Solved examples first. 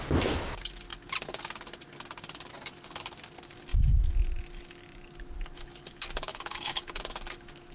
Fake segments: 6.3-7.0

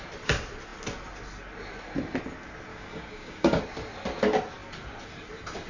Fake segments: 2.7-3.6